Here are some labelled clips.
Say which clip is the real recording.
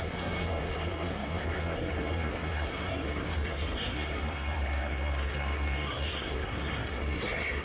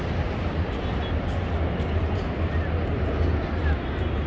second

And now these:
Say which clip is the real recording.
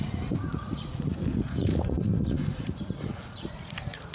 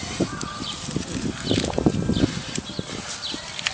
second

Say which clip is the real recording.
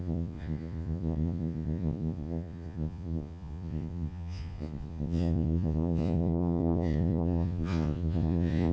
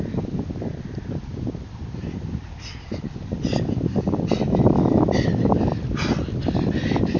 second